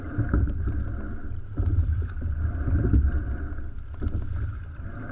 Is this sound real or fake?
real